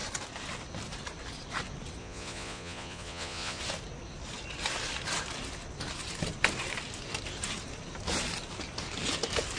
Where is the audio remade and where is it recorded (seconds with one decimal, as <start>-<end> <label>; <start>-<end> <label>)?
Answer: 0.0-2.0 recorded; 2.0-3.6 remade; 3.6-9.6 recorded

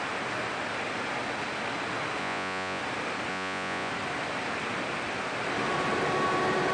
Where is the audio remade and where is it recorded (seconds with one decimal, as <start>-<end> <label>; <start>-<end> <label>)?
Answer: 0.0-2.2 recorded; 2.2-2.8 remade; 2.8-3.3 recorded; 3.3-3.9 remade; 3.9-6.7 recorded

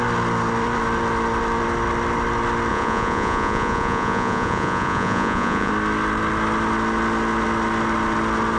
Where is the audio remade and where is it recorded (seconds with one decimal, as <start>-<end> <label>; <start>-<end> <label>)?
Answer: 0.0-2.7 recorded; 2.7-5.7 remade; 5.7-8.6 recorded

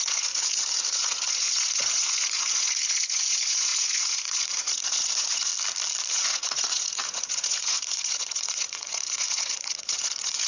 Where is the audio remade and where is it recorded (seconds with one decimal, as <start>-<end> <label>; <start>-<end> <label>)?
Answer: 0.0-5.5 remade; 5.5-6.1 recorded; 6.1-10.5 remade

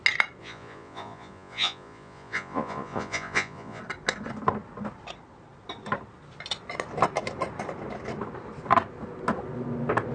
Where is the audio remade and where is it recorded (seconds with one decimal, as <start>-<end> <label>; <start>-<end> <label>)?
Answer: 0.0-0.4 recorded; 0.4-3.8 remade; 3.8-10.1 recorded

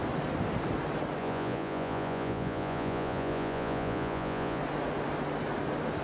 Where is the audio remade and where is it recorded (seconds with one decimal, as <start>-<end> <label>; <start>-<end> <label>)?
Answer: 0.0-1.2 recorded; 1.2-4.6 remade; 4.6-6.0 recorded

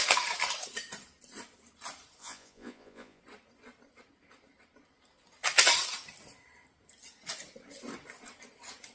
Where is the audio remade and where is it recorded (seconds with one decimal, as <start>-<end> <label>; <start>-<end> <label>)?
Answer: 0.0-2.2 recorded; 2.2-3.2 remade; 3.2-8.9 recorded